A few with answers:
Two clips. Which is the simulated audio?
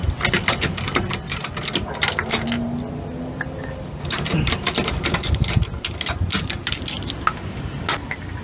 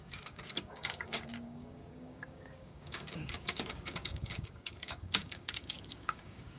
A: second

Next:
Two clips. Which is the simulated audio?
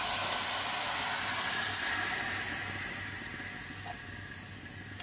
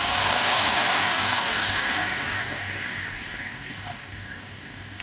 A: second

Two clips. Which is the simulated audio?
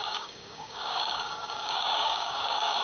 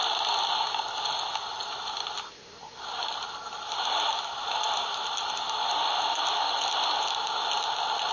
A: first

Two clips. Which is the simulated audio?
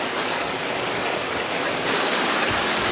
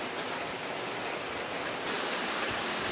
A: first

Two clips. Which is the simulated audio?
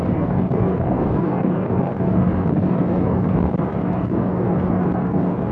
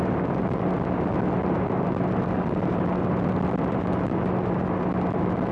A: first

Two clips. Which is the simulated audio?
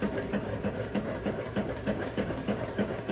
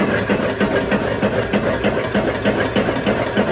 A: first